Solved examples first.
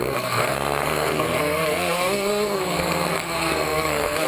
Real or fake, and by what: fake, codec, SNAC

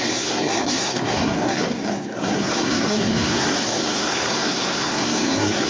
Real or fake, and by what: fake, codec, SNAC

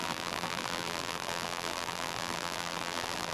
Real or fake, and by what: fake, vocoder, BigVGAN v2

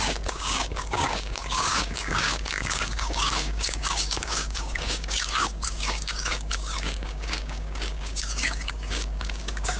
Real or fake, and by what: fake, codec, DAC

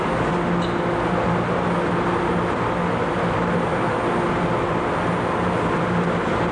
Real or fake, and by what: real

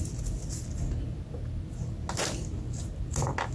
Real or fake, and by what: real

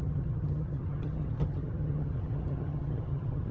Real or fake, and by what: fake, vocoder, HiFi-GAN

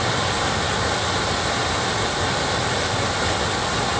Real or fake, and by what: real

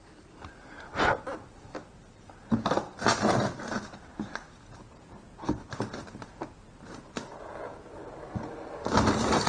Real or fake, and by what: real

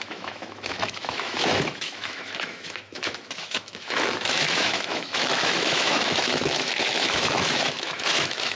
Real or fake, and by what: fake, autoencoder, DAC-VAE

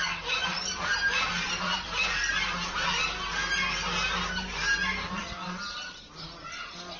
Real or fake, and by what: real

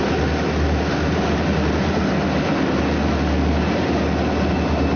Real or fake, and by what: real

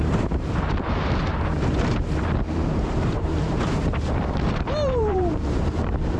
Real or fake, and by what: fake, vocoder, BigVGAN v2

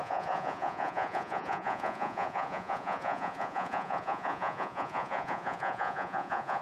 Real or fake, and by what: fake, vocoder, Vocos